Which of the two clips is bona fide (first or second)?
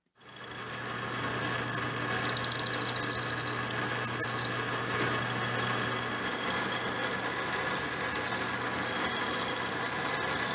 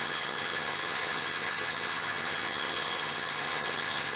first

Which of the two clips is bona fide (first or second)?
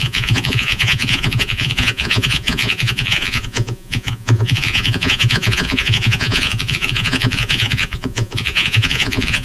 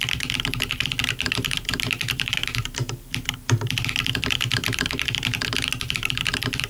second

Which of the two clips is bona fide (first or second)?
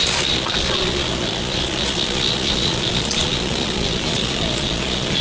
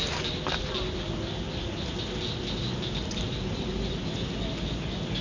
second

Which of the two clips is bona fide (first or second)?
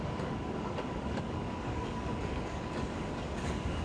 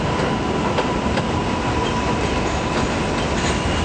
second